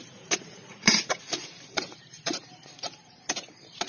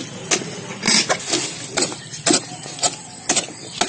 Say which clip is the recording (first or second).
second